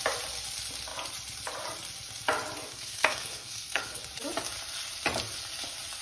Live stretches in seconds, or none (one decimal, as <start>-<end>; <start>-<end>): 0.0-2.7; 4.0-6.0